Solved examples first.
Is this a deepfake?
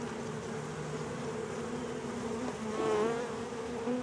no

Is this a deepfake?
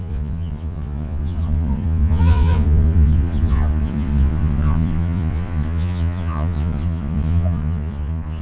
yes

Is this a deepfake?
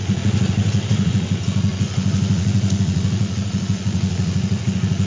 yes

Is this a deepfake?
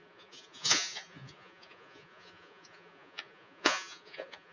yes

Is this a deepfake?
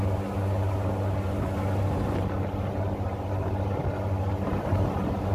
no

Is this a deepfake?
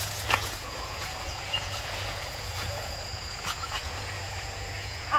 yes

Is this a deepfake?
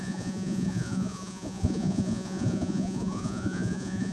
yes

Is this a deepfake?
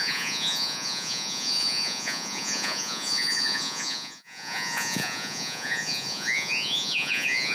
yes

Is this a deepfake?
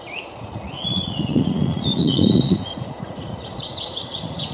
yes